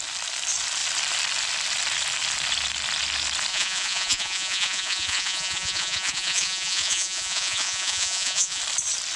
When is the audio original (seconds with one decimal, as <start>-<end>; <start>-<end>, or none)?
0.0-3.5; 8.6-9.2